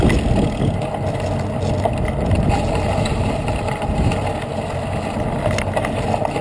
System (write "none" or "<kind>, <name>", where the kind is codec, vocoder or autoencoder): none